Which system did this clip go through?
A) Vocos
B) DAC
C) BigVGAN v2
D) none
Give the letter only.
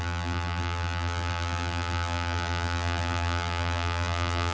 C